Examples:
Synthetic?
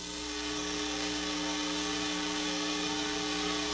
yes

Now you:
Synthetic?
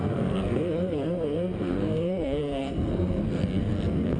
yes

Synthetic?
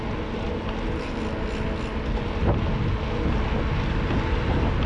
no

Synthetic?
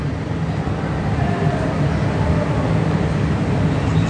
no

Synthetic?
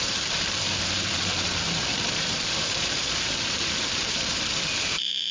yes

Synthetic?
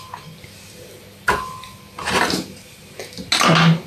no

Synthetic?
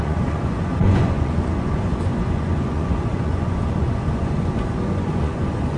yes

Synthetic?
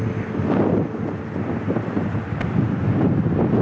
no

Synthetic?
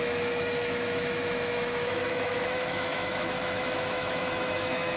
yes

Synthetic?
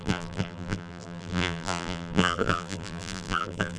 yes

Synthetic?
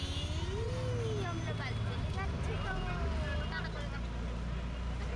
no